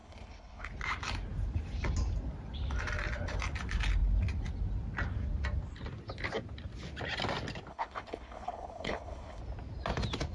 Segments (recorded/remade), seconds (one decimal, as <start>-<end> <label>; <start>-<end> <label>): 0.0-0.7 remade; 0.7-7.7 recorded; 7.7-9.4 remade; 9.4-10.3 recorded